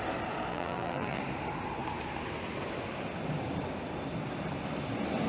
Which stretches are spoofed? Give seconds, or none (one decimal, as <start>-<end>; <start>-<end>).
0.5-1.2